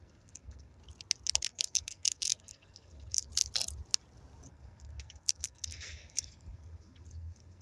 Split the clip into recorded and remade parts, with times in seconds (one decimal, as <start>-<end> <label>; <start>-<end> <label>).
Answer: 0.0-0.8 remade; 0.8-1.4 recorded; 1.4-3.3 remade; 3.3-4.5 recorded; 4.5-7.6 remade